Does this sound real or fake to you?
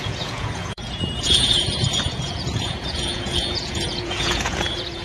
fake